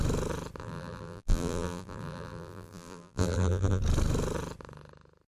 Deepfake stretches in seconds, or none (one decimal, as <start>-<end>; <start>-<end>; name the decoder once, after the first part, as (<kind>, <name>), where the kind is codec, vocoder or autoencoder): 0.6-3.8 (vocoder, BigVGAN v2)